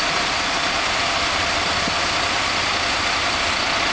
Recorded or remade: remade